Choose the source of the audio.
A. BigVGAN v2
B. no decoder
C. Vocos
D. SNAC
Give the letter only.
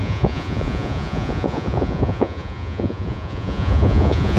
C